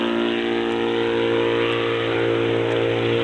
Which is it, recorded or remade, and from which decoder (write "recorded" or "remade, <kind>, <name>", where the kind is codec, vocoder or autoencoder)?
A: recorded